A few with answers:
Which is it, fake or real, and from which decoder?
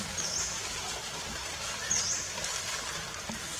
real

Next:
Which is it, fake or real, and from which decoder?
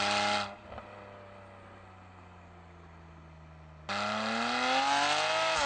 real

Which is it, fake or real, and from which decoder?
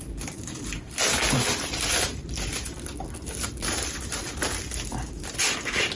real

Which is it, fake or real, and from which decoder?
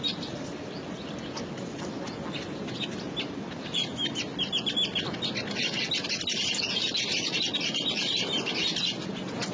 real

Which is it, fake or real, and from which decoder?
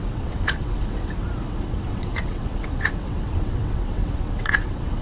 fake, vocoder, WaveNeXt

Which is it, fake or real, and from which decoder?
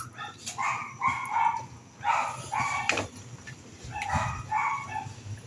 real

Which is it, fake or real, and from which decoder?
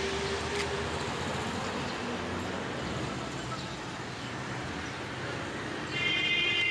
real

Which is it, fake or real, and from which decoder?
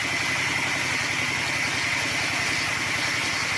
real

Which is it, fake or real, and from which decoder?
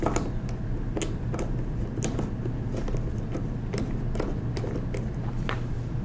real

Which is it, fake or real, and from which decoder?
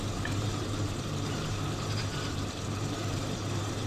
fake, vocoder, BigVGAN v2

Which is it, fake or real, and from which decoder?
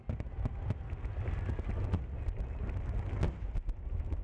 real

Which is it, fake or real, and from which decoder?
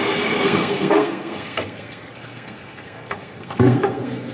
fake, codec, SNAC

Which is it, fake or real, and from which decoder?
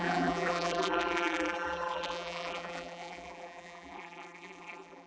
fake, vocoder, BigVGAN v2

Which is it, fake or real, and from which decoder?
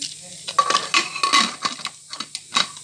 real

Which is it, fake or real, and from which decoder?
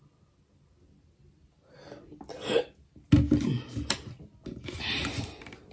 real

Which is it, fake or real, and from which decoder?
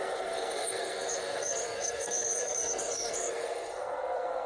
fake, codec, SNAC